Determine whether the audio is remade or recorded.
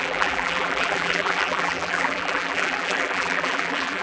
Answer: remade